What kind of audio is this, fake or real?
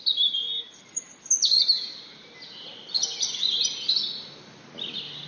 real